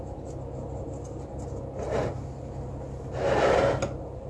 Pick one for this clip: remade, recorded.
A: recorded